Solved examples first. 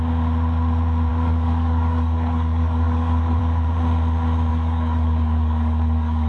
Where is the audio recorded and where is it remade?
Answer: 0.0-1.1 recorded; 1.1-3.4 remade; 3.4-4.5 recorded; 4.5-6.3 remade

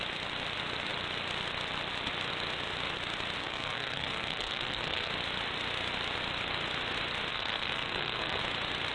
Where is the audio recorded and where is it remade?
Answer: 0.0-3.4 recorded; 3.4-5.1 remade; 5.1-7.3 recorded; 7.3-8.4 remade; 8.4-8.9 recorded